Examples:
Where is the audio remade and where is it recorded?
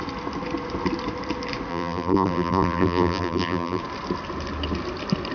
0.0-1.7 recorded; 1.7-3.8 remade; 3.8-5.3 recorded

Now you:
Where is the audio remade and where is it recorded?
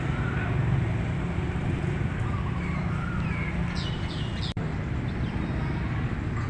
0.0-1.6 recorded; 1.6-4.4 remade; 4.4-6.5 recorded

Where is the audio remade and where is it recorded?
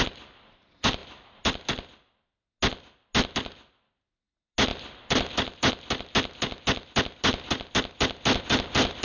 0.0-9.0 recorded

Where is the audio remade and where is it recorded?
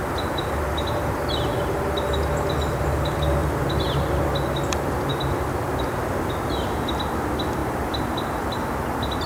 0.0-3.4 recorded; 3.4-4.2 remade; 4.2-5.1 recorded; 5.1-5.8 remade; 5.8-7.6 recorded; 7.6-8.7 remade; 8.7-9.3 recorded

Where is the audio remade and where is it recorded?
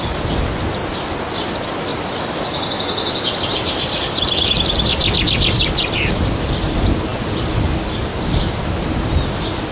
0.0-9.7 recorded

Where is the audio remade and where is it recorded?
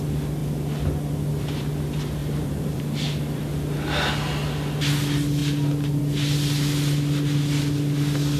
0.0-2.2 recorded; 2.2-2.8 remade; 2.8-8.4 recorded